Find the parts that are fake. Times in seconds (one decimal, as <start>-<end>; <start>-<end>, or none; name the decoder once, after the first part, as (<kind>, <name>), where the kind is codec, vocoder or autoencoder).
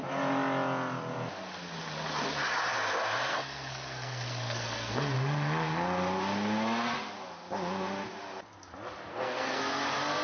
3.3-5.0 (codec, SNAC); 9.1-9.6